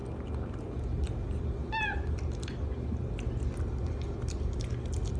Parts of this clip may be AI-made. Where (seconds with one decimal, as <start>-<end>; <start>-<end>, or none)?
none